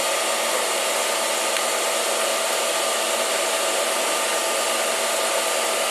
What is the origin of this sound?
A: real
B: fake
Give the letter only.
A